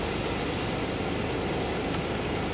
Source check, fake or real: real